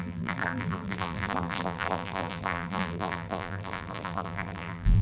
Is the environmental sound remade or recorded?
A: remade